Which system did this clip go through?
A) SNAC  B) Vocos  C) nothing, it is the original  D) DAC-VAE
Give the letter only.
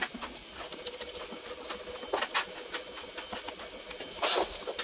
C